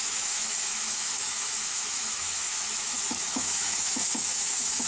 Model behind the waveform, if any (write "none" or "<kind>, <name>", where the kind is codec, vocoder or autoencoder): autoencoder, DAC-VAE